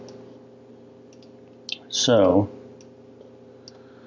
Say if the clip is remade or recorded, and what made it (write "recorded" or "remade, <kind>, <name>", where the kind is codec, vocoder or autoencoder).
recorded